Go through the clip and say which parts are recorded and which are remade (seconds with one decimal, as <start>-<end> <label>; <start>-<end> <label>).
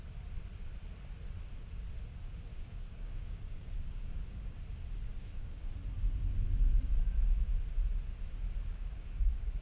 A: 0.0-2.5 recorded; 2.5-4.6 remade; 4.6-5.1 recorded; 5.1-5.7 remade; 5.7-8.7 recorded; 8.7-9.6 remade